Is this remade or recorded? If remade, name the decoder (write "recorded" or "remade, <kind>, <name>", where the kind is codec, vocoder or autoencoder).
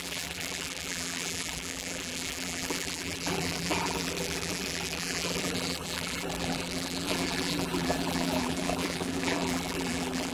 remade, vocoder, BigVGAN v2